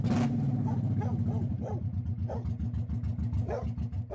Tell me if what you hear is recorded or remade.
recorded